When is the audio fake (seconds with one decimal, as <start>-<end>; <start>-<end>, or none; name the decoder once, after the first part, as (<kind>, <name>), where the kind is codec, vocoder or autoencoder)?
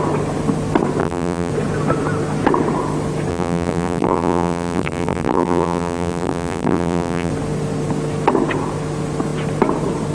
1.0-1.5 (vocoder, BigVGAN v2); 3.3-7.3